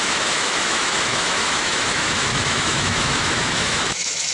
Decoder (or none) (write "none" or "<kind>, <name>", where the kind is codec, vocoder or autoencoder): autoencoder, DAC-VAE